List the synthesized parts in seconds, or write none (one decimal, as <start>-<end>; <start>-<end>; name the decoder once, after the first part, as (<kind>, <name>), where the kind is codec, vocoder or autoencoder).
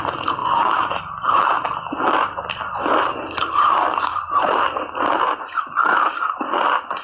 0.4-1.0 (vocoder, BigVGAN v2); 3.4-4.5